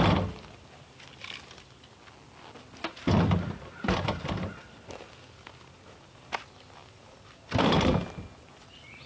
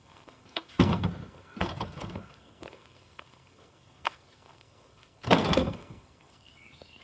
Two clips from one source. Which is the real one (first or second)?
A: first